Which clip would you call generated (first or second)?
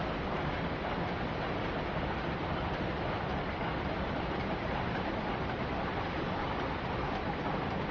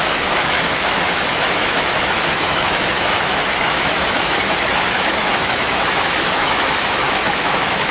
second